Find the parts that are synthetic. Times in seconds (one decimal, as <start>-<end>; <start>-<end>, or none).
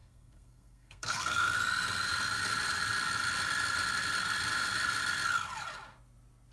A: 0.0-1.6